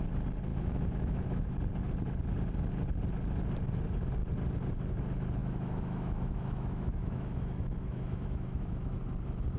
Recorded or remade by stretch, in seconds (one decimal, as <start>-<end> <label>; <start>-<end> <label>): 0.0-0.5 recorded; 0.5-1.5 remade; 1.5-5.4 recorded; 5.4-9.0 remade; 9.0-9.6 recorded